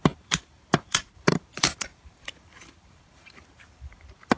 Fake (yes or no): yes